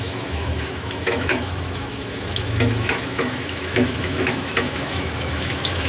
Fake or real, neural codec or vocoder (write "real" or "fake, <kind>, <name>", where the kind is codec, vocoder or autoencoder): fake, autoencoder, DAC-VAE